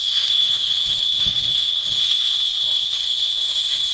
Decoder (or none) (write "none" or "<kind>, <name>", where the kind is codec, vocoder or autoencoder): autoencoder, DAC-VAE